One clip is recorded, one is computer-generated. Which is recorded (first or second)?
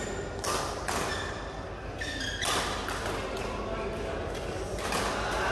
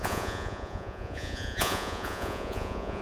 first